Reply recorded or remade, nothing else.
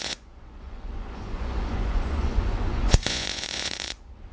remade